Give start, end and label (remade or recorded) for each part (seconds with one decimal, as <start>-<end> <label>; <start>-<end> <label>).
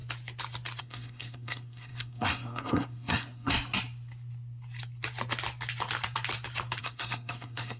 0.0-0.8 recorded; 0.8-3.5 remade; 3.5-6.8 recorded; 6.8-7.8 remade